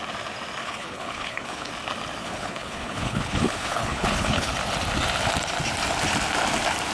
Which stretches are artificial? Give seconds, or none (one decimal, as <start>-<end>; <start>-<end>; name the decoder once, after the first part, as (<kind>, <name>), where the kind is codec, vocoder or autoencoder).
0.6-1.7 (codec, HILCodec); 2.2-4.5